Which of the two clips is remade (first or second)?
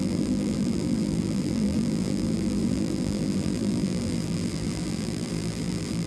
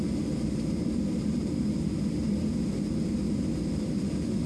first